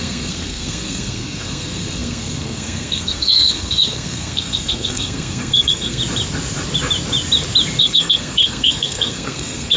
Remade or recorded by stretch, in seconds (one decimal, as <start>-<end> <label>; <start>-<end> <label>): 0.0-6.0 remade; 6.0-7.8 recorded; 7.8-9.8 remade